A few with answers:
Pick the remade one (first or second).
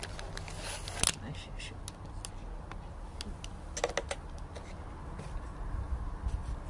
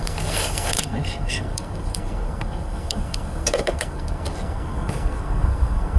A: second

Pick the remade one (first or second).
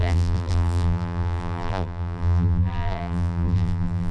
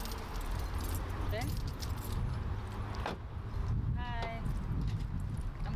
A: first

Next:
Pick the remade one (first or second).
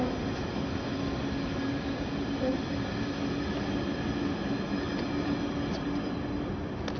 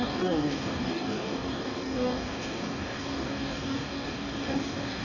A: second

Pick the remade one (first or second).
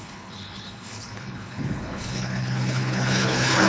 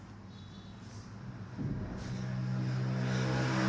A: first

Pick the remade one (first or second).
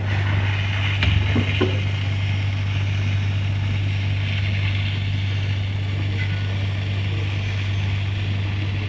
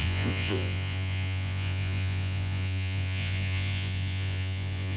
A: second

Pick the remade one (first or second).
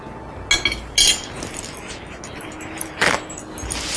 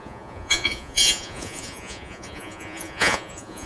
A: second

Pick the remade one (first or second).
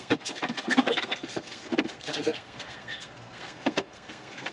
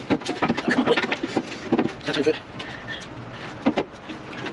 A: first